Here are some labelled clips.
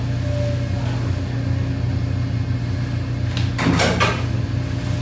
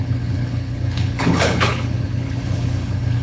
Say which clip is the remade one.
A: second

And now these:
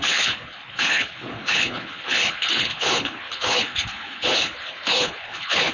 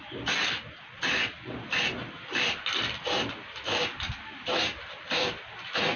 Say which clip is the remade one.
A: first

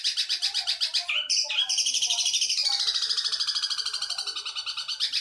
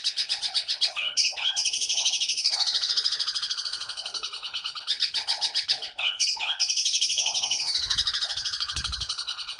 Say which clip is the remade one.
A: second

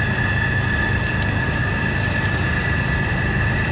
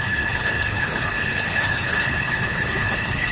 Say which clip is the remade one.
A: second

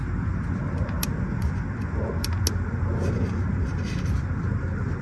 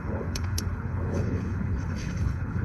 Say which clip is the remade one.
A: second